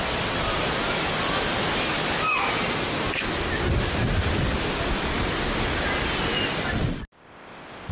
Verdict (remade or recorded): recorded